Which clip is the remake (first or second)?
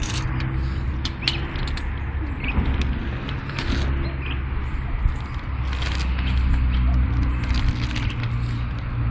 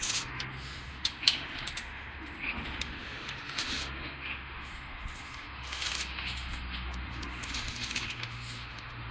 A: second